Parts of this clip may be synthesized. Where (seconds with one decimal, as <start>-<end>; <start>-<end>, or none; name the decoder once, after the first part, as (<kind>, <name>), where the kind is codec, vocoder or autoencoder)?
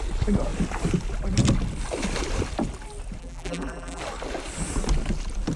3.2-4.0 (vocoder, BigVGAN v2)